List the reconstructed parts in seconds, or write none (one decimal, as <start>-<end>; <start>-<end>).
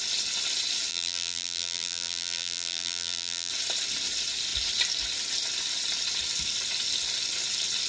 0.9-3.5